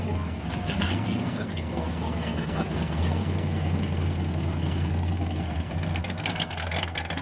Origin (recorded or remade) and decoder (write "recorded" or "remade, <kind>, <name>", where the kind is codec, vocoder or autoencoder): remade, codec, SNAC